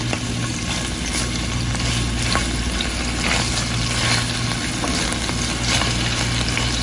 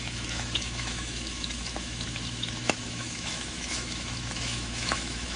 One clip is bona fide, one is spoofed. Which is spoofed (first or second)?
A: second